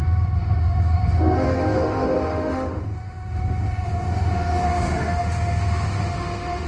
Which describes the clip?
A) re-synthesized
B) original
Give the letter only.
A